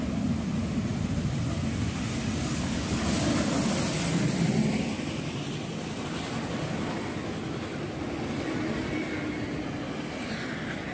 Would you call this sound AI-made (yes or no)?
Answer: no